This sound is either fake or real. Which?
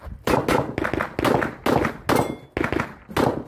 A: real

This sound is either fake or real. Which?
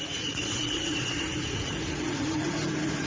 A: fake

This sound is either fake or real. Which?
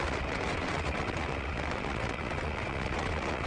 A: fake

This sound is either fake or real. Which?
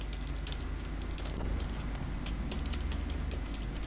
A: real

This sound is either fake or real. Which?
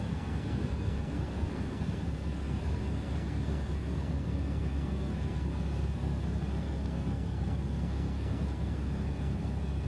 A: fake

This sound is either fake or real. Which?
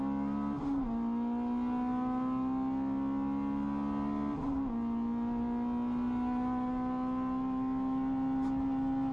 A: real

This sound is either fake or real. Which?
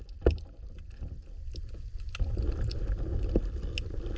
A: real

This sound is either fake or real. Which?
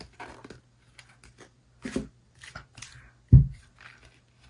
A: real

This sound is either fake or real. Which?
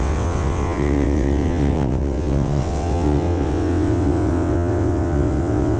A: fake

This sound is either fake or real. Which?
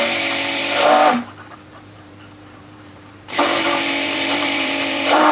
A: fake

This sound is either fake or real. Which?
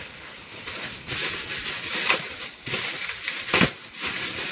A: real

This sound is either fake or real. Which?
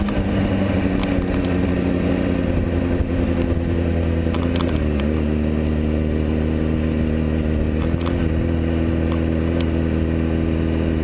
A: real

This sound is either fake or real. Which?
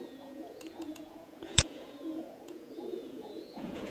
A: fake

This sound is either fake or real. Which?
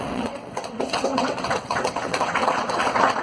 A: fake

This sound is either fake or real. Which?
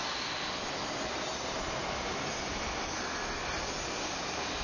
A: real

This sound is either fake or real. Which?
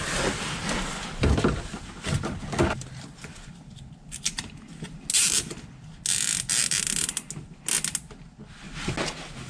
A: real